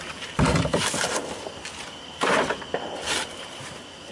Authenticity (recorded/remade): recorded